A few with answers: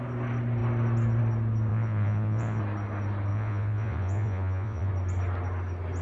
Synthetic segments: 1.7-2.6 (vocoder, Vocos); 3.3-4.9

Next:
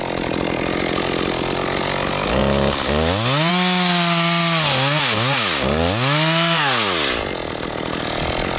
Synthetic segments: none

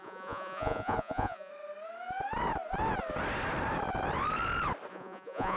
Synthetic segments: 0.0-1.5 (vocoder, Vocos); 4.9-5.6

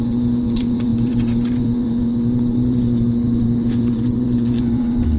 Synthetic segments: 0.0-5.2 (vocoder, Vocos)

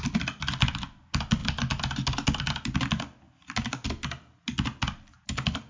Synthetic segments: none